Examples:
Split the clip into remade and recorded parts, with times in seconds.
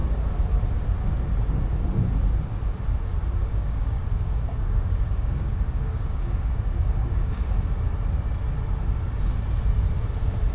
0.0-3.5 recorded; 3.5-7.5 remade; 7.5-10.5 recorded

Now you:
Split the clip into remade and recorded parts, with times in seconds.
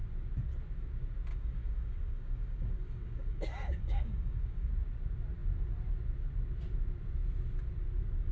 0.0-1.3 recorded; 1.3-4.7 remade; 4.7-8.3 recorded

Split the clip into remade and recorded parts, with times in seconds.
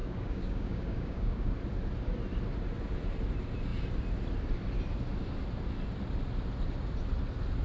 0.0-1.5 remade; 1.5-7.6 recorded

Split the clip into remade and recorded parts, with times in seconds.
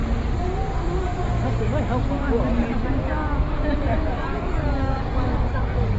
0.0-3.9 recorded; 3.9-6.0 remade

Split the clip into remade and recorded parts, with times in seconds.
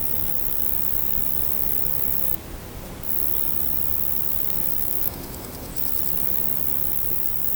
0.0-0.6 remade; 0.6-4.7 recorded; 4.7-5.7 remade; 5.7-6.9 recorded; 6.9-7.5 remade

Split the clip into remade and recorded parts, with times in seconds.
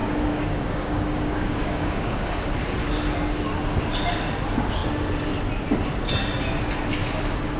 0.0-2.5 remade; 2.5-7.6 recorded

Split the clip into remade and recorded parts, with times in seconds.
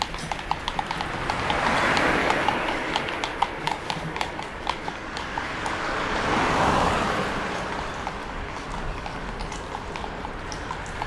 0.0-2.2 recorded; 2.2-3.1 remade; 3.1-3.6 recorded; 3.6-7.1 remade; 7.1-8.2 recorded; 8.2-9.3 remade; 9.3-11.1 recorded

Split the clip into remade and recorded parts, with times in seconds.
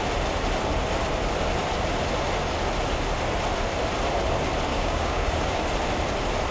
0.0-4.7 recorded; 4.7-5.3 remade; 5.3-6.5 recorded